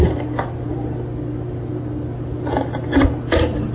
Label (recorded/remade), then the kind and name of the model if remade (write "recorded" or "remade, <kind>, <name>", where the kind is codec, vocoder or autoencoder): recorded